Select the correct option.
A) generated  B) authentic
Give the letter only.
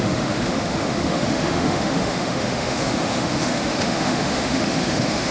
A